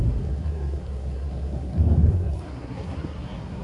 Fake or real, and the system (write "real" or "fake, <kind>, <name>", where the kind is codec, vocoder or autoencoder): fake, codec, SNAC